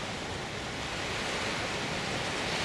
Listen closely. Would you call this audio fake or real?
fake